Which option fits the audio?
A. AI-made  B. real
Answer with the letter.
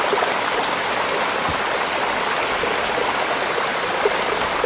B